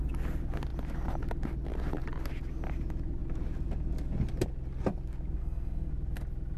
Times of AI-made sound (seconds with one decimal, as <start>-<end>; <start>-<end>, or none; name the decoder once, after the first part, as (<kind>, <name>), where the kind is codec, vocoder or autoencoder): 5.4-5.9 (codec, SNAC)